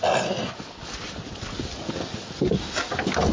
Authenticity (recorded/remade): recorded